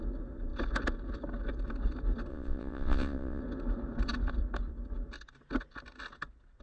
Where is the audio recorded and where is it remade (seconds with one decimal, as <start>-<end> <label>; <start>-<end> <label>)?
0.0-2.3 recorded; 2.3-3.4 remade; 3.4-6.6 recorded